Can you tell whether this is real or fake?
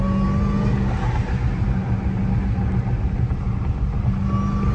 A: real